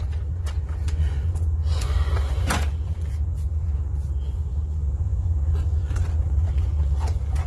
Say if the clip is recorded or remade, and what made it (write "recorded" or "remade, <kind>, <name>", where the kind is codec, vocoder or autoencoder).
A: remade, vocoder, Vocos